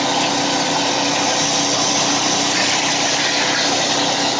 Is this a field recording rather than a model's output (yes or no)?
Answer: yes